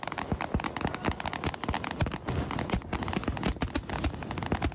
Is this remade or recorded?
recorded